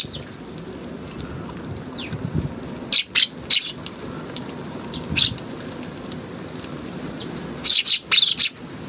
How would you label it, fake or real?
real